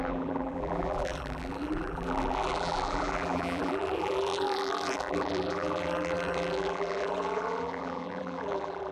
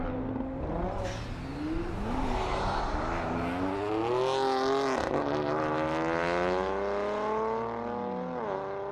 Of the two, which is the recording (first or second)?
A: second